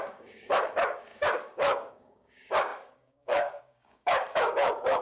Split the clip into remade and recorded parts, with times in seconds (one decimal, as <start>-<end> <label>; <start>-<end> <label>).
0.0-5.0 remade